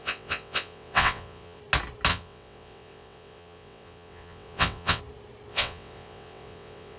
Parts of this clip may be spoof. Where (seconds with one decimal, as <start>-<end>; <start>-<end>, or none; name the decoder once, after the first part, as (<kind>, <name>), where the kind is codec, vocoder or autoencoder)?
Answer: 0.0-1.6 (vocoder, WaveNeXt); 2.1-5.0; 5.5-7.0